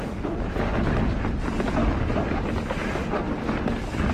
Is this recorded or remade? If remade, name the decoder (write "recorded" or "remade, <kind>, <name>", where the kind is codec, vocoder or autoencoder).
recorded